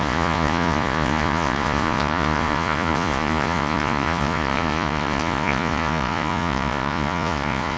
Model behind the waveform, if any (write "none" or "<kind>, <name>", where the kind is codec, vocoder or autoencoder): vocoder, Vocos